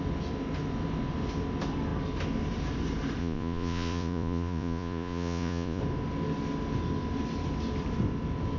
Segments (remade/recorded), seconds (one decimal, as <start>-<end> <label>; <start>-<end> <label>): 0.0-3.2 recorded; 3.2-5.8 remade; 5.8-8.6 recorded